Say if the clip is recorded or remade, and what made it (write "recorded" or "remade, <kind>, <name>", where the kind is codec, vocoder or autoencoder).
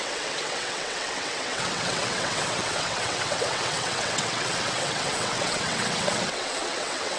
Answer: remade, vocoder, WaveNeXt